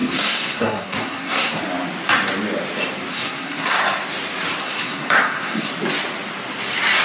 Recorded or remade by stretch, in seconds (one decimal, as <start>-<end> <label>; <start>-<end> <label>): 0.0-1.6 remade; 1.6-3.1 recorded; 3.1-3.8 remade; 3.8-4.6 recorded; 4.6-5.7 remade; 5.7-7.0 recorded